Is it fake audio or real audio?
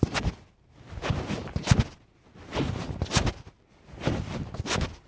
real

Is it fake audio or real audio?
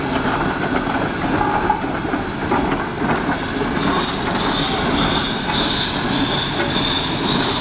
real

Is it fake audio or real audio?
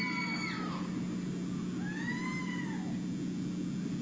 real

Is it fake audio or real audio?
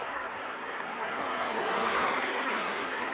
fake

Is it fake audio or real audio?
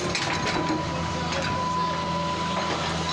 real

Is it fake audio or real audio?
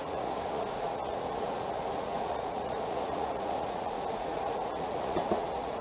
fake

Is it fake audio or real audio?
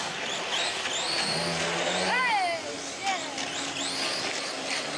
real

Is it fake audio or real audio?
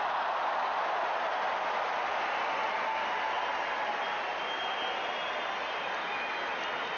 real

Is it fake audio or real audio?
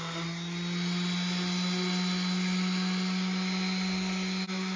real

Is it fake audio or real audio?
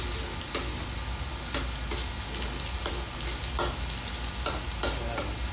real